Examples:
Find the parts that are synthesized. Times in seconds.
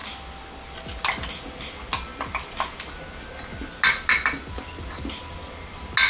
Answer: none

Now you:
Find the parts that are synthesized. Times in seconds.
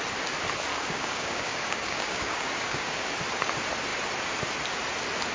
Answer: 0.7-3.1 (codec, DAC)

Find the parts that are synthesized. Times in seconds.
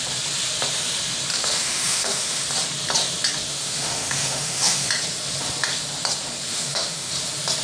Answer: 1.3-2.4 (autoencoder, DAC-VAE); 3.5-4.9; 6.5-7.1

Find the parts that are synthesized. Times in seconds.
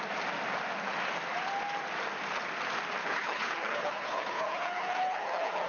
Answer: 3.0-5.7 (codec, HILCodec)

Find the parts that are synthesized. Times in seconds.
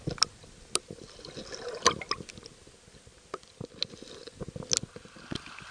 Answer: none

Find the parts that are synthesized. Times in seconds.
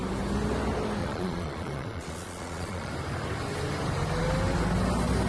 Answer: 1.0-2.9 (vocoder, Vocos)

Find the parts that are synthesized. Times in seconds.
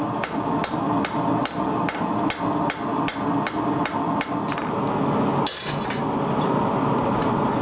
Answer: none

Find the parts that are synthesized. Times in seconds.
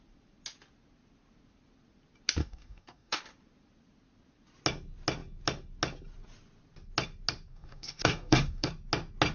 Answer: 2.4-3.2 (codec, DAC); 7.5-8.7